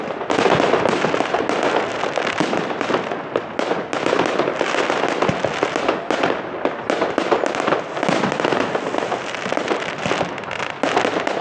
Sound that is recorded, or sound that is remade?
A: recorded